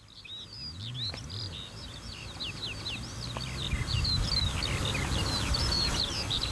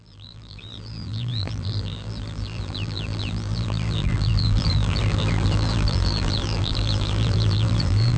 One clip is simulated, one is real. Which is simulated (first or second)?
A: second